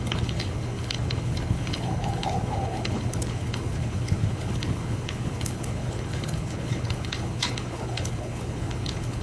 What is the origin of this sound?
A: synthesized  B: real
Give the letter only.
A